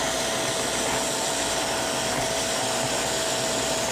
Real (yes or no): yes